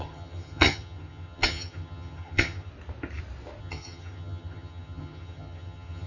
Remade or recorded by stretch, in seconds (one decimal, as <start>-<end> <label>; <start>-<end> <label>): 0.0-2.7 remade; 2.7-3.6 recorded; 3.6-6.1 remade